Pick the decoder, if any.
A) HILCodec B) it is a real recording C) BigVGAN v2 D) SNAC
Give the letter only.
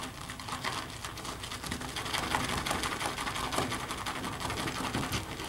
B